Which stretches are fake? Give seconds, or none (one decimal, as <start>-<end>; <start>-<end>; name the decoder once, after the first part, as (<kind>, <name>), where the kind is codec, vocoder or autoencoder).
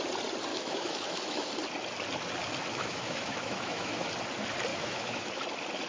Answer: 0.5-1.5 (autoencoder, DAC-VAE); 2.7-4.1; 4.7-5.3